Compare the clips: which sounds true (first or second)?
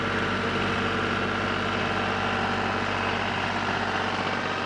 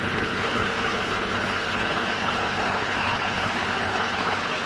first